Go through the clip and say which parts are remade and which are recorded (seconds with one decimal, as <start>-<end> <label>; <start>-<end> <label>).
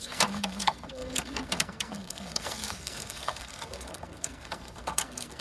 0.0-5.4 remade